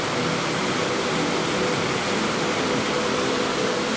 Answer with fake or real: real